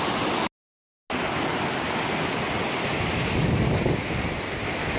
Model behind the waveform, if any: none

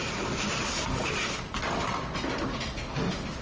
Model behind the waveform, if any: none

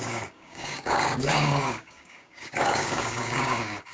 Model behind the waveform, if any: codec, DAC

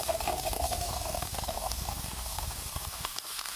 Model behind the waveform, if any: codec, DAC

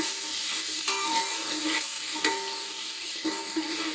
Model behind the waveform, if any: codec, DAC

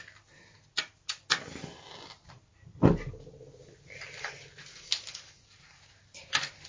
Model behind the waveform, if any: none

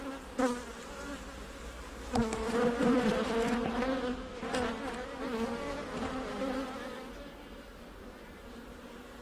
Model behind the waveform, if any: none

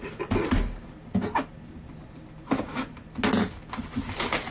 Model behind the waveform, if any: none